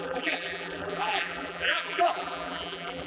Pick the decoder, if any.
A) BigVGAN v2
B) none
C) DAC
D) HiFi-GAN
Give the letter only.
A